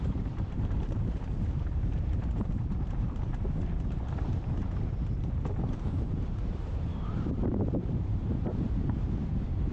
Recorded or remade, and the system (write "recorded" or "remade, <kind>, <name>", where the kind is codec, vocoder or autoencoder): remade, vocoder, BigVGAN v2